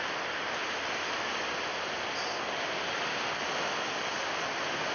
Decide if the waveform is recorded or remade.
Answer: recorded